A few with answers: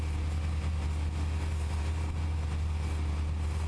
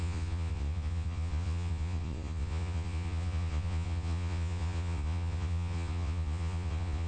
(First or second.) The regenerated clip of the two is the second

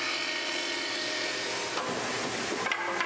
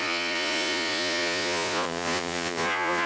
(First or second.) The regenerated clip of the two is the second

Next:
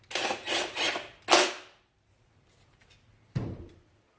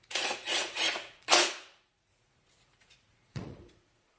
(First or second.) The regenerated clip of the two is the second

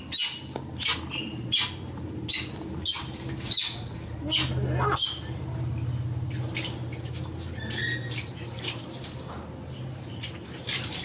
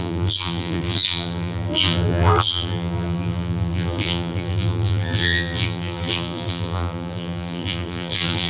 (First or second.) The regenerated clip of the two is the second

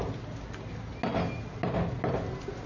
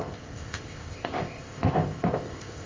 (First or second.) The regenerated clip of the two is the second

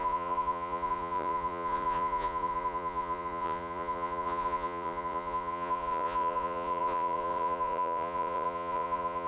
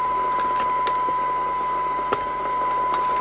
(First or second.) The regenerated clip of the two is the first